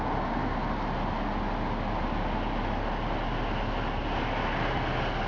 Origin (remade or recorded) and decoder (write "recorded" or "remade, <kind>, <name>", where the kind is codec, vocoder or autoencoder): recorded